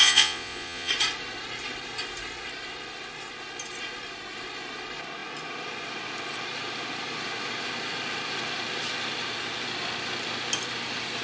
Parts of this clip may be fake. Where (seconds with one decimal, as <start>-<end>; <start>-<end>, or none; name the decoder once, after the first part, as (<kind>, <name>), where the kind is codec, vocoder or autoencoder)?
0.0-0.9 (vocoder, Vocos)